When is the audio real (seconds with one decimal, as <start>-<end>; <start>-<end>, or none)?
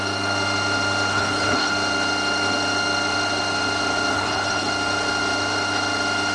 0.0-1.1; 1.7-4.1; 4.7-6.3